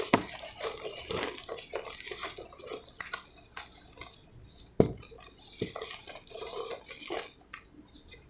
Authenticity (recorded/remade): recorded